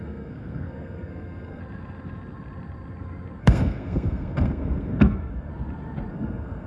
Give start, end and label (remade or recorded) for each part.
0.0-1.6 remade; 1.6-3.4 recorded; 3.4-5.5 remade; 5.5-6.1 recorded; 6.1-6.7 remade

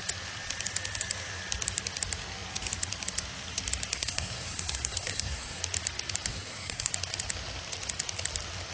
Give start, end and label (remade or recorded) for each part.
0.0-3.9 recorded; 3.9-5.6 remade; 5.6-6.3 recorded; 6.3-6.9 remade; 6.9-8.7 recorded